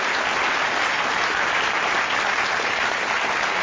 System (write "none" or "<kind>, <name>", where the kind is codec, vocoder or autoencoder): none